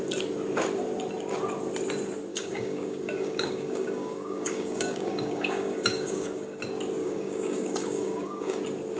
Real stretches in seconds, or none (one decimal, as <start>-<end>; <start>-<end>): 0.0-2.3; 6.6-7.0; 8.6-9.0